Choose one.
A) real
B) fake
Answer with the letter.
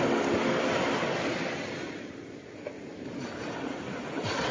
A